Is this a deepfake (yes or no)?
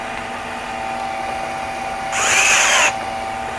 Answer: no